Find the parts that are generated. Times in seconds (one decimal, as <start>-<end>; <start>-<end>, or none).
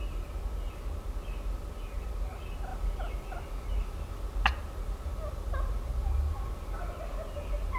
none